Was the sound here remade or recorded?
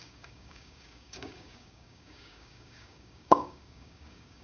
remade